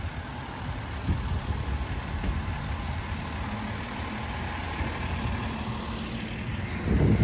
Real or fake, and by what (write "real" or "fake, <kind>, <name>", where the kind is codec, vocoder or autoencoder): real